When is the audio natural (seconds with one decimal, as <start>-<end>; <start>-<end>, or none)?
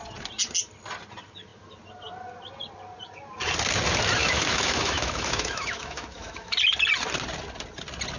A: 0.0-4.2; 6.6-8.2